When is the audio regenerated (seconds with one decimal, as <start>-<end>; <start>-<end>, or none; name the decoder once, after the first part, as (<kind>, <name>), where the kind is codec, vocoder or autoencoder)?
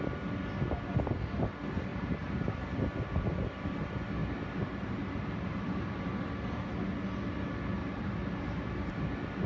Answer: 1.9-2.8 (vocoder, BigVGAN v2); 4.2-6.2; 7.8-9.0